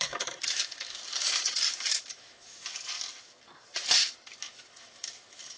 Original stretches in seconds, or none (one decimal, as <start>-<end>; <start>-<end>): 1.0-1.7; 2.6-4.4